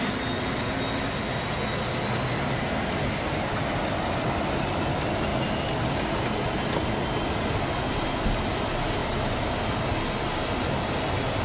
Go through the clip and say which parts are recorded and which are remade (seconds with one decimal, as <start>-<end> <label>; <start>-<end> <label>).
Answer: 0.0-11.4 recorded